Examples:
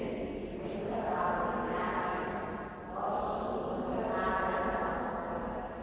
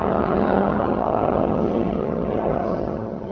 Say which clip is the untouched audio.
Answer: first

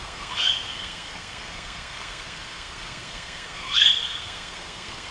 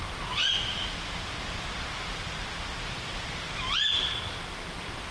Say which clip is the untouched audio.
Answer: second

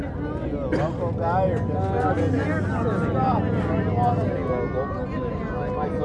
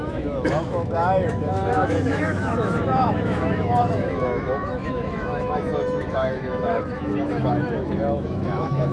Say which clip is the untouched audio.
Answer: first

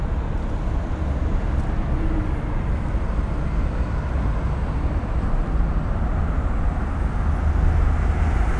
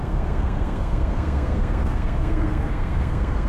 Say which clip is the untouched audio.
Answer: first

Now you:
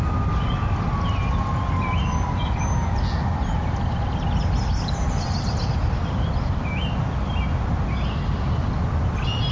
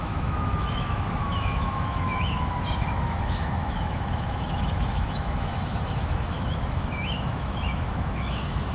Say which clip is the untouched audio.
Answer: first